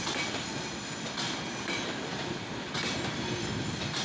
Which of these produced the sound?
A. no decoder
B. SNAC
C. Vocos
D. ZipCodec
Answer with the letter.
A